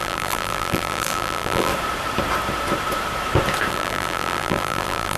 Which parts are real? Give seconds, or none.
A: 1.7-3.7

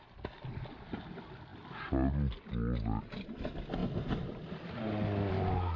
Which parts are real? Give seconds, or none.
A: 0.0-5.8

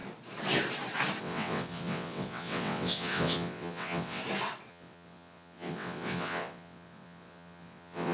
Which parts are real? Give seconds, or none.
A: 0.0-1.2; 4.2-4.7

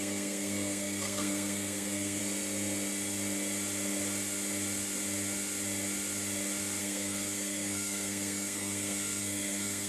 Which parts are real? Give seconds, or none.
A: 2.2-6.8

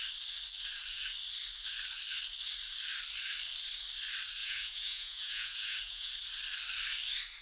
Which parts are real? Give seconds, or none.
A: 0.0-4.4; 6.1-7.4

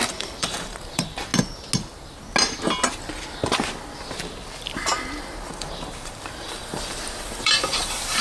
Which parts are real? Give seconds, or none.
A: 1.3-5.5